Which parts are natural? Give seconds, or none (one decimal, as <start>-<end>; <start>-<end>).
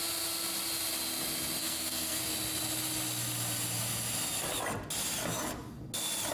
0.0-1.6; 2.2-6.3